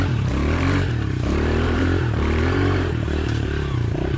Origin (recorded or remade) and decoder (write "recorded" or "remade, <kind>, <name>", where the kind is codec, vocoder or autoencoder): remade, vocoder, BigVGAN v2